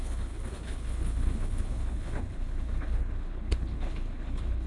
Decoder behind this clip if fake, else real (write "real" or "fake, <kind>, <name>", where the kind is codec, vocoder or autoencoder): fake, codec, HILCodec